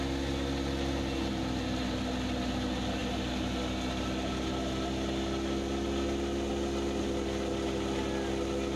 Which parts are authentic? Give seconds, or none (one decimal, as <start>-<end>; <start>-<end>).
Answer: 0.0-8.8